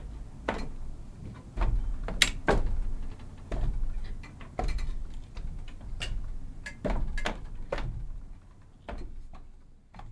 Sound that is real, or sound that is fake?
real